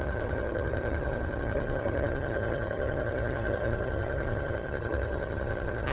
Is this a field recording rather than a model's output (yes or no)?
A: no